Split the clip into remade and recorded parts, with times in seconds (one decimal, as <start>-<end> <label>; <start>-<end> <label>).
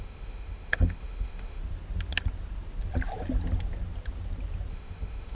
0.0-1.6 remade; 1.6-4.7 recorded; 4.7-5.3 remade